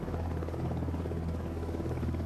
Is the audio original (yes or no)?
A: no